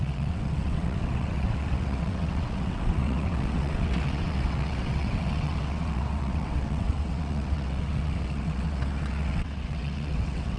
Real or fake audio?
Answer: fake